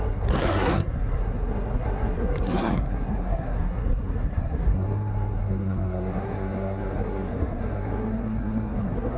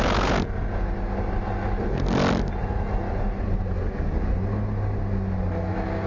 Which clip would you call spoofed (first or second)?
first